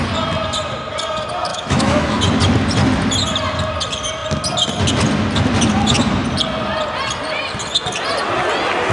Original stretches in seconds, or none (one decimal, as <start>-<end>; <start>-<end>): 0.0-1.5; 2.2-8.9

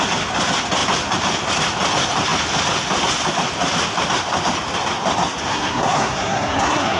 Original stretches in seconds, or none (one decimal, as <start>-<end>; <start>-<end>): 0.0-5.5

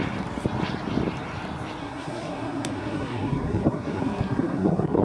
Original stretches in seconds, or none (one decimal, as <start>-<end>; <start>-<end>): 0.0-1.8

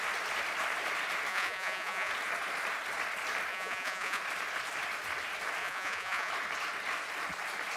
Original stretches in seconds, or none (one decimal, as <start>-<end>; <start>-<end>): 0.0-1.3; 2.1-3.5; 4.2-5.6; 6.3-7.8

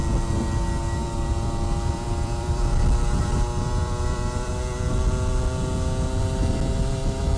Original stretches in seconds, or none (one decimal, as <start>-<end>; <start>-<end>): 0.0-1.0; 4.5-7.4

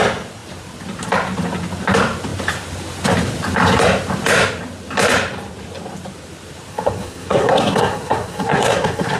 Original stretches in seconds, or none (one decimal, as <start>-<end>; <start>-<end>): 0.0-6.7

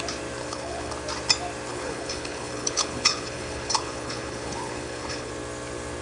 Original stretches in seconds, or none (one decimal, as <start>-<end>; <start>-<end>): 0.0-0.4; 0.9-1.7; 5.3-6.0